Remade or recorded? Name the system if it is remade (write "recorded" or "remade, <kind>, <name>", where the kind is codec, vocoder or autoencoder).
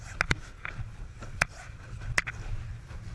recorded